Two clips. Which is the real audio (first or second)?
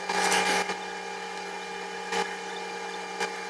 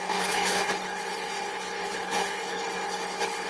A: first